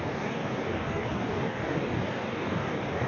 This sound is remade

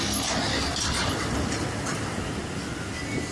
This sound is recorded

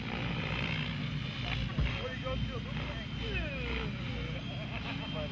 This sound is recorded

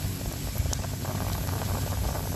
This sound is recorded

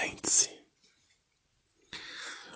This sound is recorded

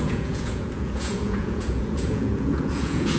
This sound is remade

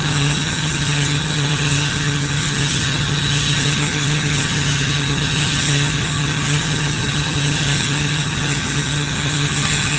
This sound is remade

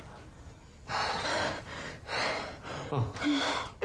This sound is recorded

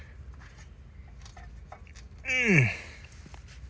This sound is recorded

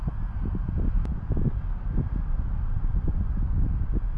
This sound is recorded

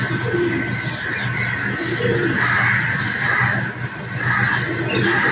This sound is recorded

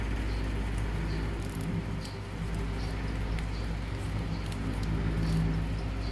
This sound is recorded